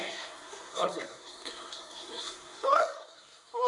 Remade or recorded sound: remade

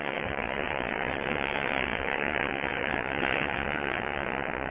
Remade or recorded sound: remade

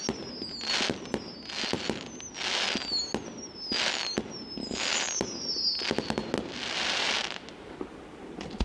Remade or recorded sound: recorded